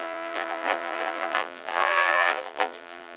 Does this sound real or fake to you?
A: fake